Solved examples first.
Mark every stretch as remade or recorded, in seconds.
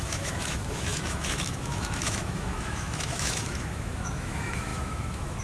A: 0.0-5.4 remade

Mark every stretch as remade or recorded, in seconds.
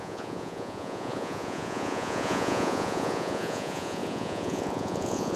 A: 0.0-5.4 remade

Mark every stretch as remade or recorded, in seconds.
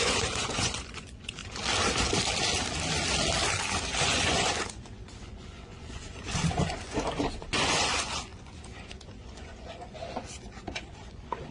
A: 0.0-1.4 remade; 1.4-4.0 recorded; 4.0-11.5 remade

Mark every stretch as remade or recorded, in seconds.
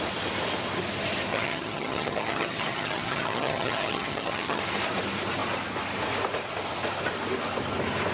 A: 0.0-1.3 recorded; 1.3-4.6 remade; 4.6-8.1 recorded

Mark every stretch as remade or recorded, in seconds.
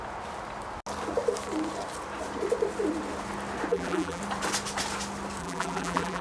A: 0.0-3.7 recorded; 3.7-4.2 remade; 4.2-5.4 recorded; 5.4-6.2 remade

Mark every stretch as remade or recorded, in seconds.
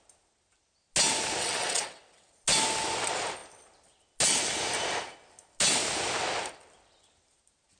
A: 0.0-1.4 recorded; 1.4-2.3 remade; 2.3-7.8 recorded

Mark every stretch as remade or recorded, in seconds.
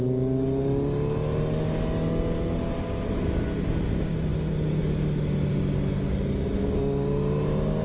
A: 0.0-7.8 recorded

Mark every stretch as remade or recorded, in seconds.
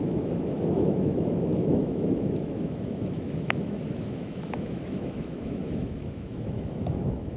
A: 0.0-7.4 remade